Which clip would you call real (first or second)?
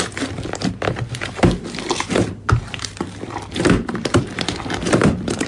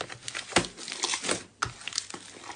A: second